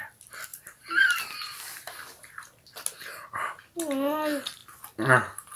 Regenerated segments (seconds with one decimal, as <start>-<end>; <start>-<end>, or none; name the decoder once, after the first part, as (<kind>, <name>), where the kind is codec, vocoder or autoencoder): 0.5-2.3 (vocoder, BigVGAN v2)